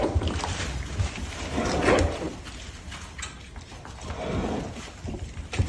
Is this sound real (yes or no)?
yes